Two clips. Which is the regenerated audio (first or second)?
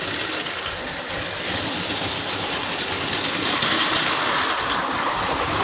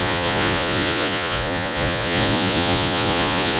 second